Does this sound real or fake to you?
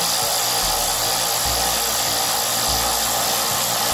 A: real